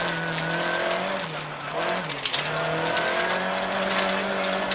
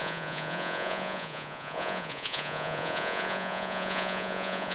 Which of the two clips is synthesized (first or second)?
second